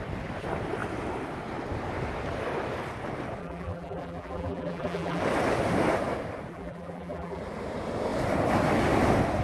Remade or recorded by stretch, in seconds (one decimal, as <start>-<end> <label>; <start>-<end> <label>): 0.0-3.4 recorded; 3.4-5.2 remade; 5.2-6.5 recorded; 6.5-7.4 remade; 7.4-9.4 recorded